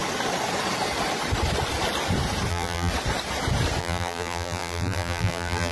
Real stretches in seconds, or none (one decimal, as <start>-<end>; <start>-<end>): 0.0-2.5; 2.9-3.8